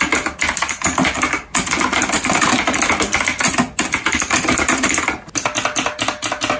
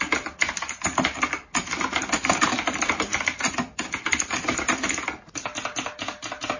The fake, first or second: second